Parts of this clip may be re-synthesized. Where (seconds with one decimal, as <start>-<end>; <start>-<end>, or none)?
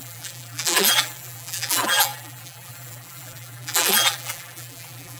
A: 0.0-5.2